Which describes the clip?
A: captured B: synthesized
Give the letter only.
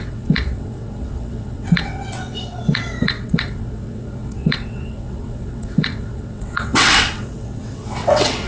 B